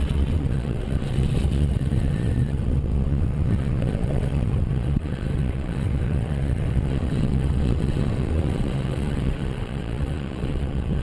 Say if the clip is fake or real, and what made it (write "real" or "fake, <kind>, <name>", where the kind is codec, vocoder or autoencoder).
fake, vocoder, WaveNeXt